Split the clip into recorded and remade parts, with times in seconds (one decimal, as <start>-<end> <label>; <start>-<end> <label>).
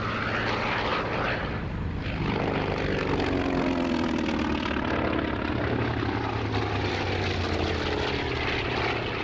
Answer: 0.0-0.9 recorded; 0.9-5.5 remade; 5.5-9.2 recorded